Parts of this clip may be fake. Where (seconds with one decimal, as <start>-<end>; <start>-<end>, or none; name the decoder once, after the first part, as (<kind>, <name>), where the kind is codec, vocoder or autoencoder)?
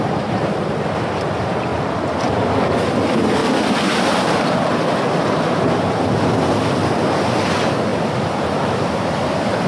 0.0-1.7 (vocoder, BigVGAN v2); 2.2-3.4; 7.5-9.7